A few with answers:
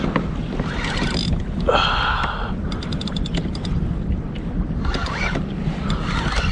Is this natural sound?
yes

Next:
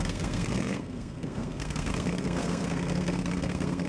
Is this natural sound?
no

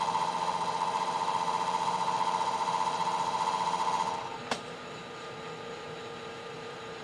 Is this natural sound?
no